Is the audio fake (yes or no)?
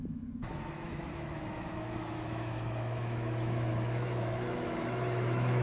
yes